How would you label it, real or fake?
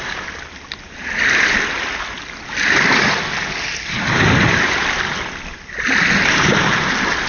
real